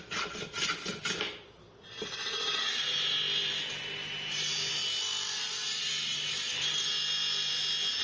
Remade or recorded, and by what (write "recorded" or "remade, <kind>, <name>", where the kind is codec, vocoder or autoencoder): recorded